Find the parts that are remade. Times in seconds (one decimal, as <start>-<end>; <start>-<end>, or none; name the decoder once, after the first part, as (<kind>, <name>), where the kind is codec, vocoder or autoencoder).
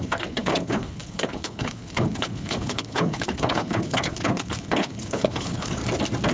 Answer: 0.0-5.8 (codec, HILCodec)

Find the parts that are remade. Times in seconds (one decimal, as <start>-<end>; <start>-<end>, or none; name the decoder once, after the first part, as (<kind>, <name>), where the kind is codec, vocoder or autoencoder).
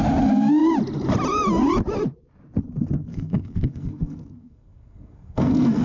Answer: 3.1-5.8 (codec, SNAC)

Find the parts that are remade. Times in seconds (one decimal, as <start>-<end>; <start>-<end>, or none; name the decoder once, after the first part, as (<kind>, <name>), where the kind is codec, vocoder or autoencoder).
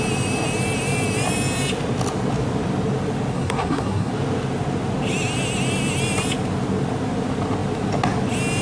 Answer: 3.3-4.1 (codec, SNAC)